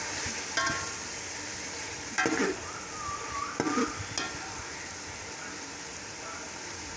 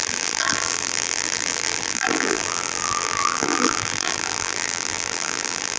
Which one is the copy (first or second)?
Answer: second